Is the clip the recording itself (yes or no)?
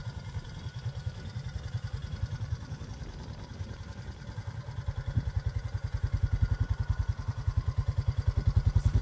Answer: yes